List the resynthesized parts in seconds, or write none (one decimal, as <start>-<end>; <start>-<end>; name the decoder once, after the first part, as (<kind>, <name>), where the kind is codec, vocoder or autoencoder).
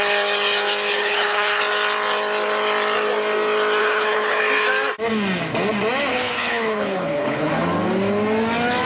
0.9-1.6 (codec, HILCodec); 3.8-4.4; 6.1-7.5